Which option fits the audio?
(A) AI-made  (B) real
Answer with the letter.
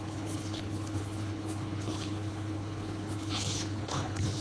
A